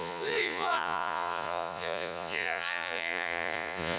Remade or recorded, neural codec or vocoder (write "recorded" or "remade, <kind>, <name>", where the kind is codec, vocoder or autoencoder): remade, vocoder, Vocos